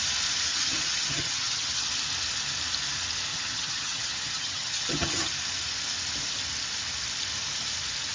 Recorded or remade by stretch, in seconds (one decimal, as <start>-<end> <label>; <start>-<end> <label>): 0.0-0.5 recorded; 0.5-1.9 remade; 1.9-3.3 recorded; 3.3-5.3 remade; 5.3-8.1 recorded